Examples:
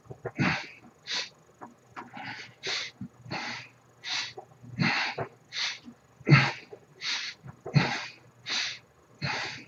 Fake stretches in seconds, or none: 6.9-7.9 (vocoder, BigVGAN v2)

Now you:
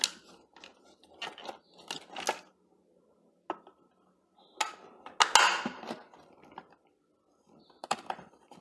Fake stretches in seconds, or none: 7.8-8.6 (vocoder, BigVGAN v2)

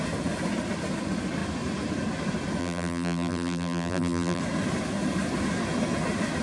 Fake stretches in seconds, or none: 2.6-4.4 (vocoder, BigVGAN v2)

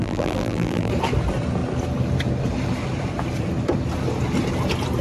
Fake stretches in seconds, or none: 0.0-0.9 (vocoder, BigVGAN v2)